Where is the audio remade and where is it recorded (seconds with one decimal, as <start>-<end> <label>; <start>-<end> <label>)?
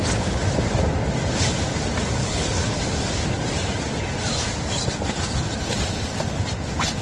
0.0-2.2 recorded; 2.2-2.8 remade; 2.8-7.0 recorded